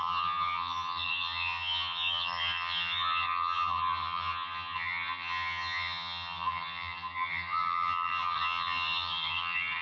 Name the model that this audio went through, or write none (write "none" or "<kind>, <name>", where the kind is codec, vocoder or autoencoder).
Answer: vocoder, HiFi-GAN